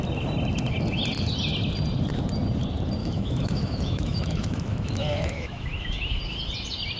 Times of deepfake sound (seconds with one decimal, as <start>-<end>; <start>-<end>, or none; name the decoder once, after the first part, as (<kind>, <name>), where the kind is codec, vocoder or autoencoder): 3.0-6.2 (autoencoder, DAC-VAE)